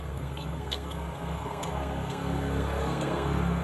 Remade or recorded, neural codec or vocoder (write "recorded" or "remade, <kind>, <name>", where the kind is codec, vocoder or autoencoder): remade, codec, SNAC